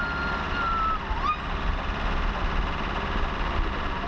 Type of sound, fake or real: real